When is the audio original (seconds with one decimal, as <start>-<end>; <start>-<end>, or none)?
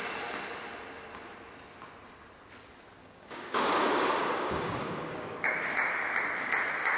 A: 0.0-3.0; 5.6-7.0